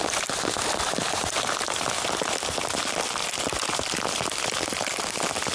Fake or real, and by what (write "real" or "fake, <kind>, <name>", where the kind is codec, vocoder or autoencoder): real